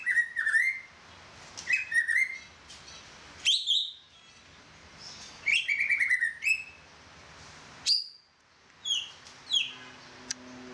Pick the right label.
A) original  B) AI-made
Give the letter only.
A